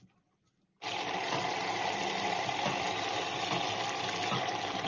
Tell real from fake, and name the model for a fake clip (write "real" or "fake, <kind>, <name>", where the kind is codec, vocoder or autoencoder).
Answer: real